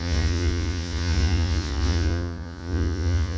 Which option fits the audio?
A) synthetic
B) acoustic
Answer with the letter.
A